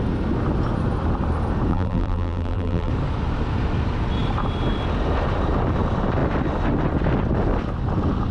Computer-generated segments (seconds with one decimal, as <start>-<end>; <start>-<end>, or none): 1.7-2.9